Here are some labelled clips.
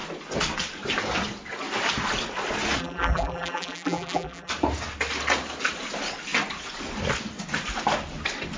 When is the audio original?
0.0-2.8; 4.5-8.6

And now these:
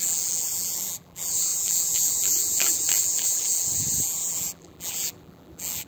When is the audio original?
none

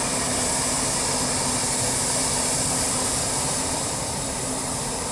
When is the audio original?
0.0-1.6

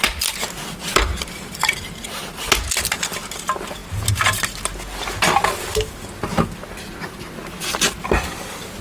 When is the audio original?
0.0-8.8